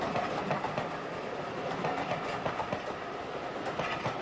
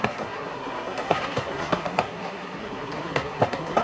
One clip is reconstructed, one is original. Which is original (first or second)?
first